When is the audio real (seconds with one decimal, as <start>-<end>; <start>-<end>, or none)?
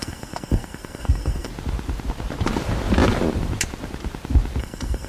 1.5-4.6